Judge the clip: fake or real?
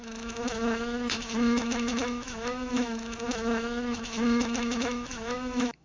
fake